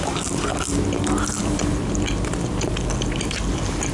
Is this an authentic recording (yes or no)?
yes